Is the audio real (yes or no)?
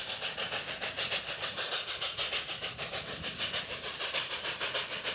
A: yes